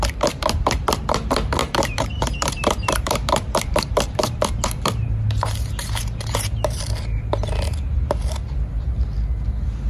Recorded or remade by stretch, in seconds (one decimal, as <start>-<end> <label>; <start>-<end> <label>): 0.0-1.6 recorded; 1.6-6.8 remade; 6.8-9.9 recorded